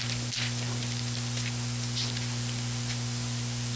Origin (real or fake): real